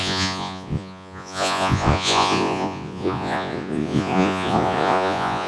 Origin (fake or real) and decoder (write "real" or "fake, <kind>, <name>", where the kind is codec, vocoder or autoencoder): fake, vocoder, Vocos